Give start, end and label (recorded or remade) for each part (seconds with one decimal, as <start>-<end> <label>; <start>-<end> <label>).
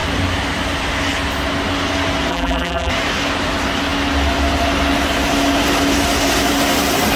0.0-2.3 recorded; 2.3-2.9 remade; 2.9-7.2 recorded